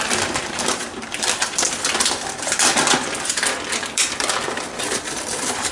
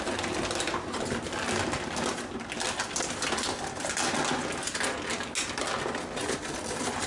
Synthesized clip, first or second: first